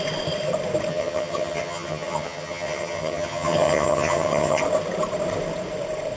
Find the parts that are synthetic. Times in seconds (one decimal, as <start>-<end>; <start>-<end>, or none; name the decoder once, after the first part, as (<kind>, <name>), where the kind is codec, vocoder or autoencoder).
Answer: 0.9-4.6 (vocoder, HiFi-GAN)